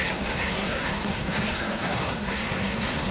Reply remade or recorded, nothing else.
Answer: remade